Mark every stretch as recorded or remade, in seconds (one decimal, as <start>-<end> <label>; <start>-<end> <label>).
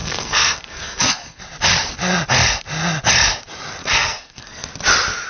0.0-1.4 remade; 1.4-3.8 recorded; 3.8-4.7 remade; 4.7-5.3 recorded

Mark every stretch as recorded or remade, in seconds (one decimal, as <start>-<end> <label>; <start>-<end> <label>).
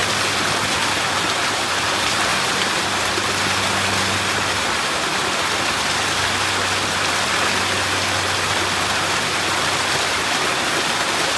0.0-11.4 recorded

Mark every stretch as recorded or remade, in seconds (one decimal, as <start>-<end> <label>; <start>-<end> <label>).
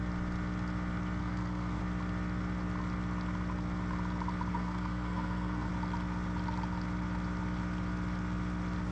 0.0-1.2 recorded; 1.2-1.8 remade; 1.8-4.5 recorded; 4.5-5.7 remade; 5.7-8.9 recorded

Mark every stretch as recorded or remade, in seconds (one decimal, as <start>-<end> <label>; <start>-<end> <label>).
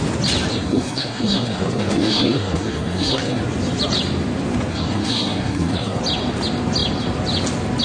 0.0-0.5 recorded; 0.5-3.4 remade; 3.4-4.7 recorded; 4.7-6.0 remade; 6.0-7.8 recorded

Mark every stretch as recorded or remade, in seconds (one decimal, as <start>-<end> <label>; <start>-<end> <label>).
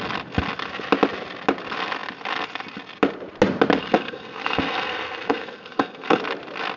0.0-3.8 recorded; 3.8-6.2 remade; 6.2-6.8 recorded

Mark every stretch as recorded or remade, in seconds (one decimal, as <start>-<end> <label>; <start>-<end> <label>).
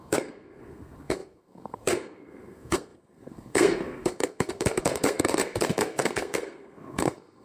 0.0-7.4 remade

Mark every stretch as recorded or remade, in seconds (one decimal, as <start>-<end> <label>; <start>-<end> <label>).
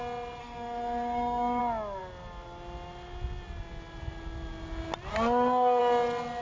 0.0-0.4 recorded; 0.4-1.6 remade; 1.6-6.4 recorded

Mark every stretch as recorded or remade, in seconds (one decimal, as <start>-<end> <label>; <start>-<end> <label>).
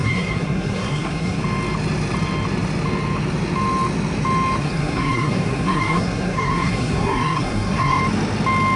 0.0-1.4 remade; 1.4-4.6 recorded; 4.6-8.0 remade; 8.0-8.8 recorded